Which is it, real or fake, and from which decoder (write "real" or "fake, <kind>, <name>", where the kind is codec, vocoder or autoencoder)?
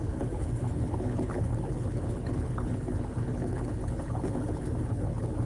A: fake, codec, HILCodec